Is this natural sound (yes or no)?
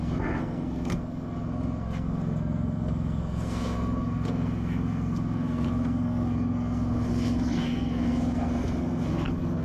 no